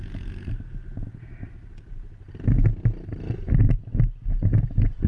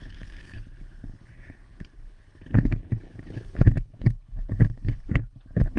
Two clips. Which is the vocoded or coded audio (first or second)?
second